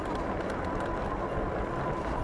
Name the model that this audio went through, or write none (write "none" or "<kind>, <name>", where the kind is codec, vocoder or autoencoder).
none